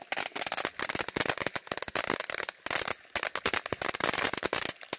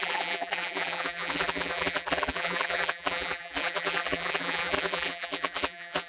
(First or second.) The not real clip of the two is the second